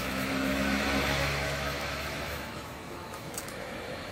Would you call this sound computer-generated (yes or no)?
yes